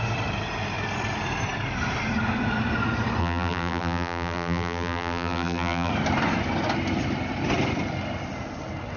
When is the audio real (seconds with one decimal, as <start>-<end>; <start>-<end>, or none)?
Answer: 0.0-3.2; 5.9-9.0